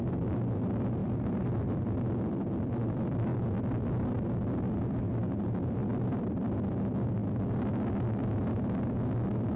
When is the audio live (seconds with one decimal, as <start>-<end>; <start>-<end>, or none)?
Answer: 3.3-5.7; 7.2-9.6